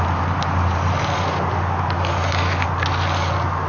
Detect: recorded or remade recorded